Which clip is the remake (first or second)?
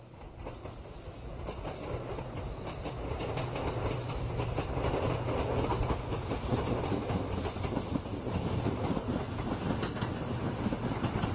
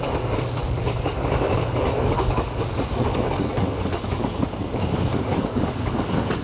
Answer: second